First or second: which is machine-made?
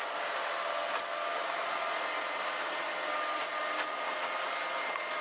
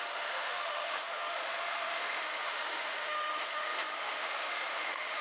second